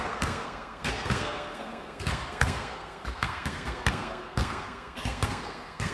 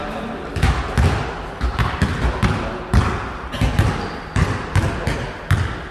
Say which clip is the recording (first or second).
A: second